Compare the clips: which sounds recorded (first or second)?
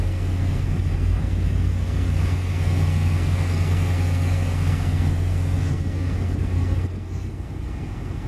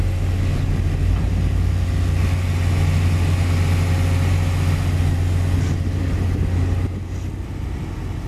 second